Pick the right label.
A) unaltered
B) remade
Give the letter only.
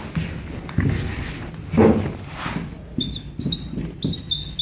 A